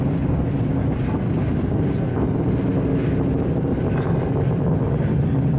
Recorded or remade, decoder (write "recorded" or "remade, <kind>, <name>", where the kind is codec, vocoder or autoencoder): recorded